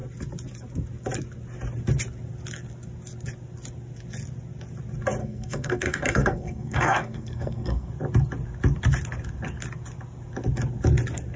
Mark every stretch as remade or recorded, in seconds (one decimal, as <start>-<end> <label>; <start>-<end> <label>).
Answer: 0.0-5.2 recorded; 5.2-7.9 remade; 7.9-11.4 recorded